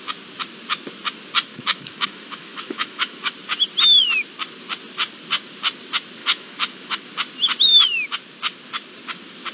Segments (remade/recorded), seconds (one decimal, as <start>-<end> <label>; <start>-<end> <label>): 0.0-1.5 recorded; 1.5-3.3 remade; 3.3-6.2 recorded; 6.2-7.0 remade; 7.0-9.5 recorded